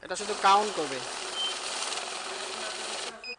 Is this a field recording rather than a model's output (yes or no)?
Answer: yes